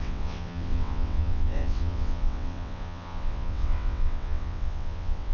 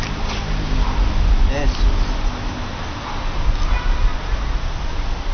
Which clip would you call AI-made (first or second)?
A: first